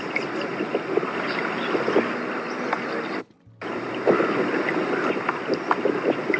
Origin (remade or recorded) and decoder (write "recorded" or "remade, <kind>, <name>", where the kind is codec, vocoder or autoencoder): recorded